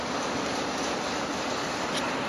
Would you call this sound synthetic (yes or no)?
no